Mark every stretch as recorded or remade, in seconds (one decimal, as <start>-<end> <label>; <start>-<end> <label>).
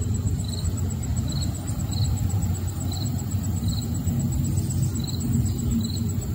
0.0-6.3 recorded